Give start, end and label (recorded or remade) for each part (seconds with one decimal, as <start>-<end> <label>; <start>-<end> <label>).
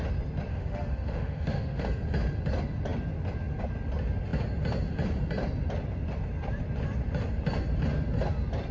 0.0-0.5 recorded; 0.5-1.8 remade; 1.8-8.7 recorded